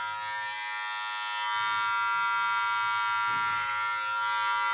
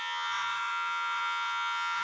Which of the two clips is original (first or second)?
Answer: first